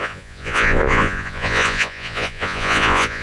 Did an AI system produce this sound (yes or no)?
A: yes